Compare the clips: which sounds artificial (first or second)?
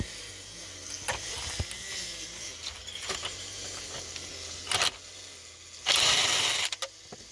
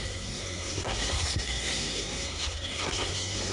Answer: second